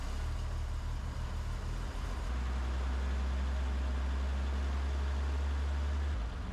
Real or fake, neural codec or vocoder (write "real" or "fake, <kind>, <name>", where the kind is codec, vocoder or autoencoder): real